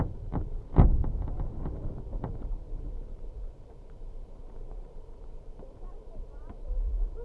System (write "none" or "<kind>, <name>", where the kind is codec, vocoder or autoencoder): vocoder, BigVGAN v2